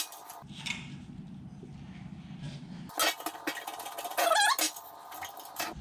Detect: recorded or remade recorded